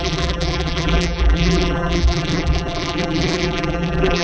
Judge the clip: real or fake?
fake